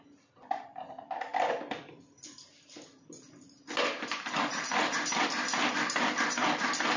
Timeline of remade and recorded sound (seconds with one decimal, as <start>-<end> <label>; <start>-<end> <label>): 0.0-7.0 recorded